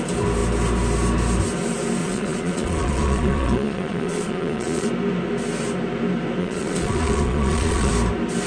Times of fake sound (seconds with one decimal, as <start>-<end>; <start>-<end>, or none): 2.0-4.9; 6.4-7.9